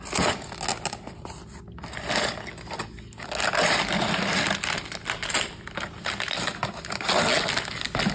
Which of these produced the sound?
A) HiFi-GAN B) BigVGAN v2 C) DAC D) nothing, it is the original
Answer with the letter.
D